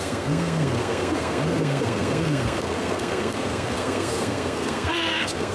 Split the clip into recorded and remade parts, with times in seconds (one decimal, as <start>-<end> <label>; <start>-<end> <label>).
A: 0.0-5.5 remade